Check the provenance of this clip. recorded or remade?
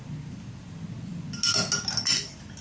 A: recorded